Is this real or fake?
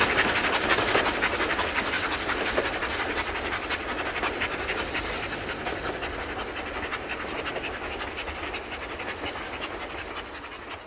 real